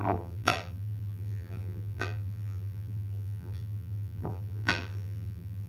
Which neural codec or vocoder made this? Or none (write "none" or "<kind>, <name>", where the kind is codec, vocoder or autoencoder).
vocoder, BigVGAN v2